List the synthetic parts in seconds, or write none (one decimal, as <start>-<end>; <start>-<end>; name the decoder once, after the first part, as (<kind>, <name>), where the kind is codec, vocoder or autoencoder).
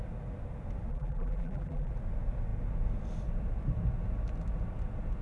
0.9-1.9 (vocoder, BigVGAN v2)